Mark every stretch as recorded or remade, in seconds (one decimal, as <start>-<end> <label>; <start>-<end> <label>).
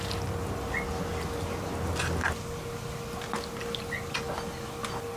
0.0-5.2 recorded